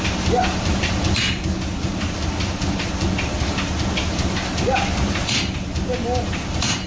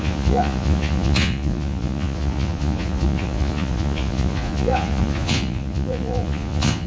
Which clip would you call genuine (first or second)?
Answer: first